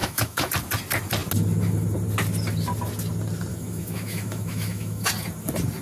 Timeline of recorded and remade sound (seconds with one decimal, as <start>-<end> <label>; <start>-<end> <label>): 0.0-0.5 remade; 0.5-3.5 recorded; 3.5-5.1 remade; 5.1-5.8 recorded